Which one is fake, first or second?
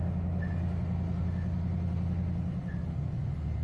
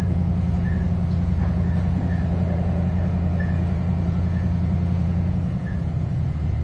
second